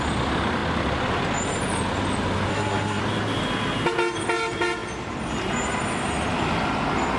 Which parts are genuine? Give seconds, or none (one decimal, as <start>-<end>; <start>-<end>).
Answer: 0.0-2.5; 3.0-7.2